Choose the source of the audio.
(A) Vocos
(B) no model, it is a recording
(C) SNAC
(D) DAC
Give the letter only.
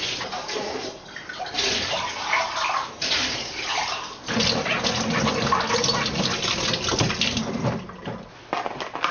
B